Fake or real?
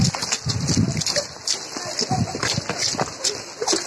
real